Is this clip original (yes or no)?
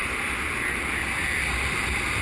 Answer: yes